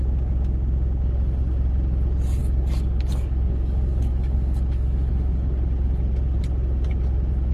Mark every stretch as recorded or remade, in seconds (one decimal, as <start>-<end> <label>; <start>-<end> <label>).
0.0-2.4 recorded; 2.4-5.1 remade; 5.1-7.5 recorded